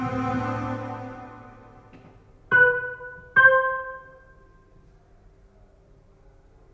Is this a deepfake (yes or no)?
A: no